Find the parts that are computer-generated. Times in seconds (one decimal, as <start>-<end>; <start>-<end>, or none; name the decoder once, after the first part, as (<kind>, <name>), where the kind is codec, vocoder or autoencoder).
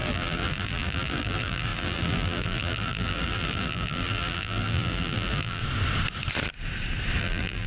0.0-5.6 (vocoder, BigVGAN v2); 7.2-7.7